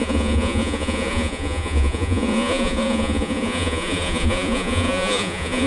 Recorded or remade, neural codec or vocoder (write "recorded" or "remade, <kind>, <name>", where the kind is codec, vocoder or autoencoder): remade, vocoder, Vocos